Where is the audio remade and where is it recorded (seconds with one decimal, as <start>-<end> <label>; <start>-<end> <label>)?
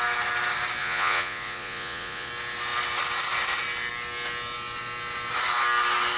0.0-0.8 recorded; 0.8-2.3 remade; 2.3-6.2 recorded